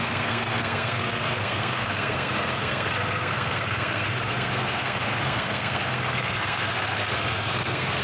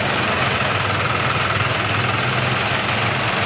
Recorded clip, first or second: second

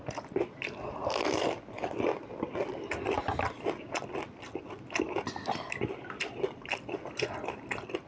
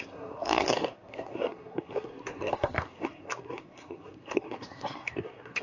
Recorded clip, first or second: first